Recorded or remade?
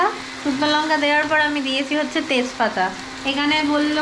recorded